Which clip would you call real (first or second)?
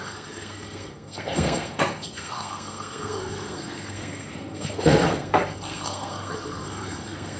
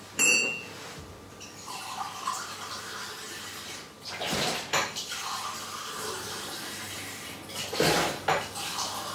second